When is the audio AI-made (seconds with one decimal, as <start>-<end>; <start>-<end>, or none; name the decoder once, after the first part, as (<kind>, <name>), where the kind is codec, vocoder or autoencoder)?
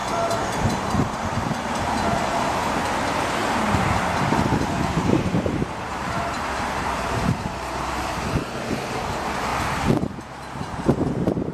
0.6-9.5 (vocoder, BigVGAN v2); 10.2-11.5